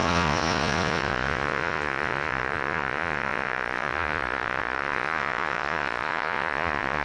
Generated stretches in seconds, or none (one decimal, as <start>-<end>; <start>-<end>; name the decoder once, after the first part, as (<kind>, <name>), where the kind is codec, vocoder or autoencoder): 0.0-7.0 (vocoder, Vocos)